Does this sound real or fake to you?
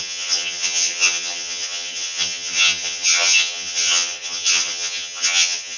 fake